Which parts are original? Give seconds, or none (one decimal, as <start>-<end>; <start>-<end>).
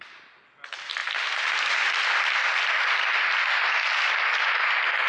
0.0-5.1